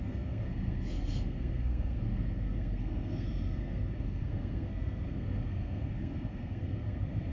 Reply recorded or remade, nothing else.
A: remade